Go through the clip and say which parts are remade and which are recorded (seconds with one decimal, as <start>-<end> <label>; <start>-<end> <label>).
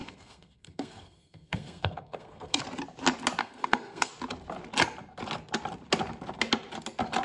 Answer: 0.0-2.6 remade; 2.6-3.4 recorded; 3.4-4.1 remade; 4.1-7.2 recorded